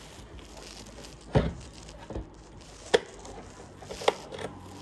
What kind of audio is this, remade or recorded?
recorded